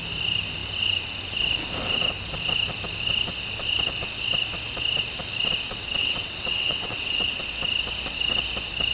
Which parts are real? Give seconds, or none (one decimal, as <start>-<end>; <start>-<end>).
0.0-6.0; 7.4-8.9